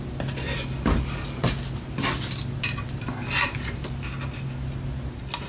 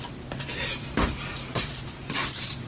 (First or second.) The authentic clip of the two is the first